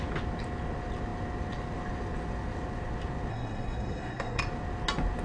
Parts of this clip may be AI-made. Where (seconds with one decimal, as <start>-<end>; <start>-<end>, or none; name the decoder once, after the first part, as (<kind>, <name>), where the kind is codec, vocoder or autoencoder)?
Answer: 3.3-4.4 (codec, SNAC)